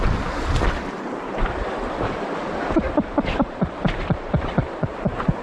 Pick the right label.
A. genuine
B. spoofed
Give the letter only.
B